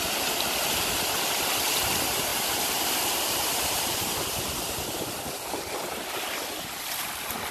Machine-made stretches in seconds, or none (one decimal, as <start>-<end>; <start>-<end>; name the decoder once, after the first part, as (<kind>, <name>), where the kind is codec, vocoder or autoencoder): 2.3-6.8 (vocoder, BigVGAN v2)